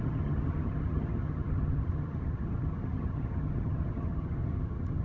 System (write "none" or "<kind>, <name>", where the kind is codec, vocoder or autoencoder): vocoder, HiFi-GAN